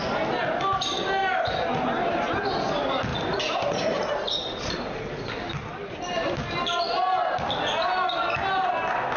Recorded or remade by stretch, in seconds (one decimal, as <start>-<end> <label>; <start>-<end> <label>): 0.0-3.1 recorded; 3.1-4.8 remade; 4.8-9.2 recorded